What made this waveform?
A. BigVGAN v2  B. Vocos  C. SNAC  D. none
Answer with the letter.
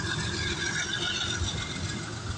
D